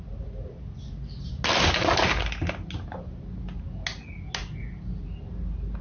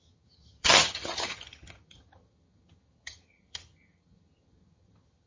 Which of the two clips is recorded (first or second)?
first